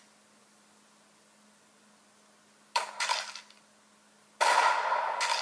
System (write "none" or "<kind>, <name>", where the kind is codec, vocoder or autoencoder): none